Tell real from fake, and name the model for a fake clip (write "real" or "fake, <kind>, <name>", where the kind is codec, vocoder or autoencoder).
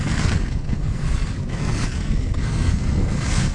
fake, codec, SNAC